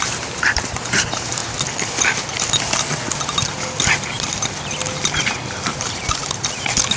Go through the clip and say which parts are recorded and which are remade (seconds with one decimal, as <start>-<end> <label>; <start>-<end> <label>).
0.0-1.4 remade; 1.4-5.6 recorded; 5.6-6.2 remade; 6.2-7.0 recorded